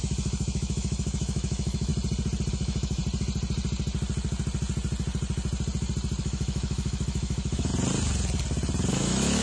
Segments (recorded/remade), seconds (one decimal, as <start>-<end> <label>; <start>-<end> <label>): 0.0-1.9 remade; 1.9-2.5 recorded; 2.5-3.0 remade; 3.0-6.2 recorded; 6.2-7.7 remade; 7.7-8.9 recorded; 8.9-9.4 remade